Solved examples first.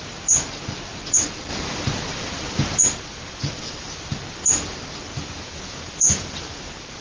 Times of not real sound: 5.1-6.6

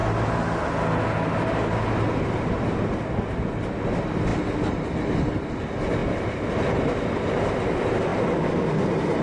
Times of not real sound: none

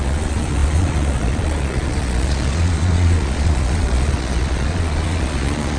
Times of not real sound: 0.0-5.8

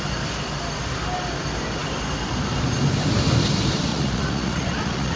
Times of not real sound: 3.9-5.2